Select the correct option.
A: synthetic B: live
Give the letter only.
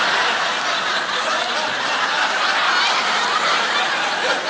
B